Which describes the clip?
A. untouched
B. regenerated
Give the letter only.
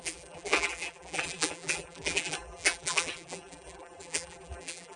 B